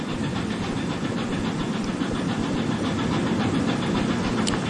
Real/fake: fake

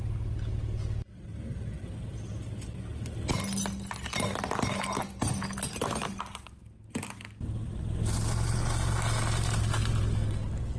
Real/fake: real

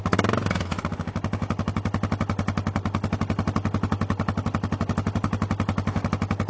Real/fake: real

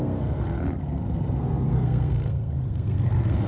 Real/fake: fake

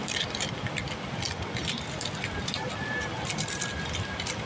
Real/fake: real